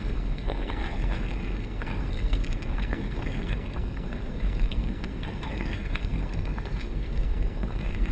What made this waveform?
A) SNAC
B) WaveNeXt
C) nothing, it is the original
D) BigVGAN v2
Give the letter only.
A